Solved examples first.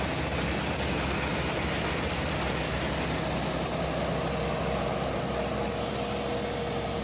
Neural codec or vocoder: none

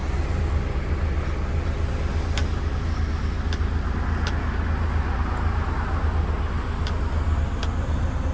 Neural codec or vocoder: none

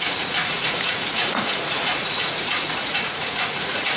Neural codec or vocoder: vocoder, Vocos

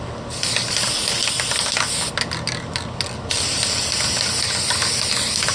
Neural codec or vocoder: none